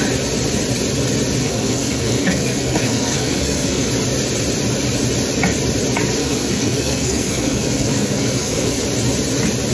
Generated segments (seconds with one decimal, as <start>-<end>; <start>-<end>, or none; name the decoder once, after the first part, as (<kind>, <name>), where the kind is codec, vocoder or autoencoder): 1.4-3.9 (codec, SNAC); 6.2-8.8